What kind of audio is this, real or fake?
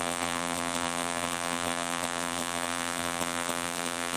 fake